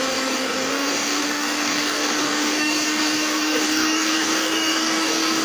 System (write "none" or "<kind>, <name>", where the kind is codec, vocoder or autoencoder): codec, DAC